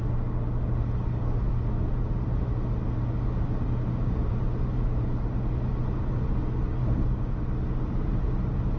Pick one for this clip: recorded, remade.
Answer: recorded